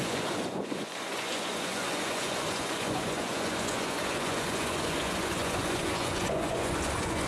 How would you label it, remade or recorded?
remade